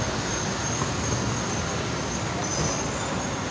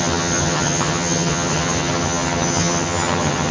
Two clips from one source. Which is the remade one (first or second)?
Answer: second